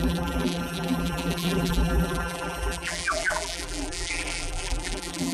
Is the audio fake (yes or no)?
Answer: yes